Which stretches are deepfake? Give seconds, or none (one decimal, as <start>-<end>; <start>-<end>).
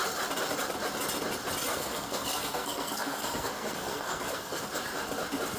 1.7-4.6